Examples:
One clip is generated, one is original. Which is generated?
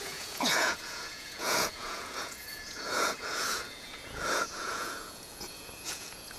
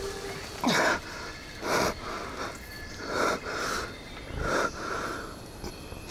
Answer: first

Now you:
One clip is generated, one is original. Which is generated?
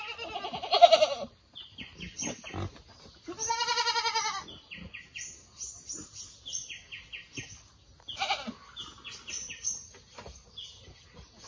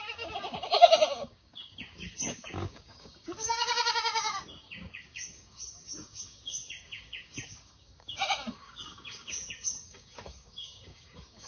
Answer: second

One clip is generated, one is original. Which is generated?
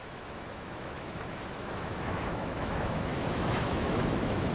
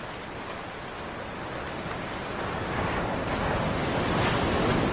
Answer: first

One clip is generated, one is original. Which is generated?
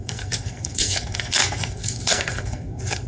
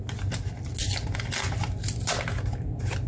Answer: first